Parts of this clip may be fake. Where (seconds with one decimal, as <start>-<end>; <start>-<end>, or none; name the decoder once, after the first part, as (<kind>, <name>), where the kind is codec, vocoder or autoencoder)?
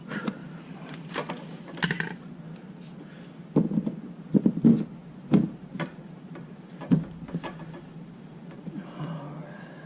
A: 0.4-1.3 (vocoder, BigVGAN v2); 5.0-9.0